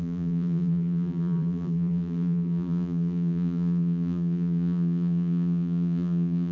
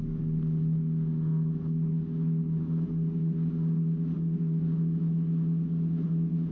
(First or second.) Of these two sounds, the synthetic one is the first